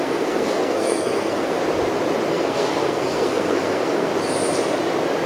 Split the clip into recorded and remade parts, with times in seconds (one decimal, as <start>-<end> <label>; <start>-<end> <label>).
0.0-1.6 remade; 1.6-2.3 recorded; 2.3-4.1 remade; 4.1-5.3 recorded

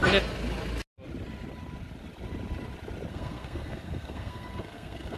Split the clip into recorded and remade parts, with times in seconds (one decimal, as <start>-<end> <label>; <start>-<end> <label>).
0.0-3.1 recorded; 3.1-5.2 remade

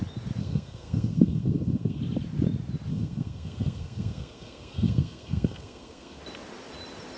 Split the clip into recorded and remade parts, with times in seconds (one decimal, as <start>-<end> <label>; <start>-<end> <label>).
0.0-0.4 recorded; 0.4-2.0 remade; 2.0-2.9 recorded; 2.9-6.2 remade; 6.2-7.2 recorded

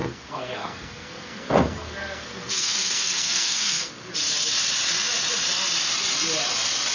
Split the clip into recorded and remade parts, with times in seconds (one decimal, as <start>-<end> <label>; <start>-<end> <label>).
0.0-4.1 remade; 4.1-6.9 recorded

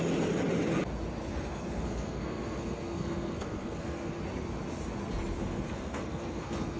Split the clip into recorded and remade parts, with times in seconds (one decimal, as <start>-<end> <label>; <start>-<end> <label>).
0.0-1.3 recorded; 1.3-4.2 remade; 4.2-5.4 recorded; 5.4-6.8 remade

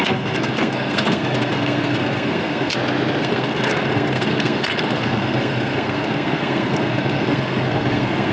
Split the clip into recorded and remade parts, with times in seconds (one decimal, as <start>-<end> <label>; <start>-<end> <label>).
0.0-2.7 remade; 2.7-3.2 recorded; 3.2-8.3 remade